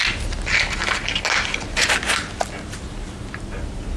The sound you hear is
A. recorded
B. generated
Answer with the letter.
A